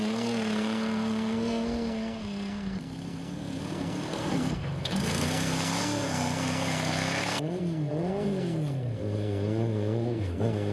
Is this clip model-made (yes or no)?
yes